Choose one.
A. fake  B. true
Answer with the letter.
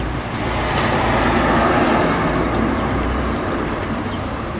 A